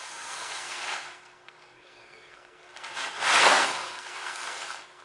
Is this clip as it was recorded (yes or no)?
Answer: no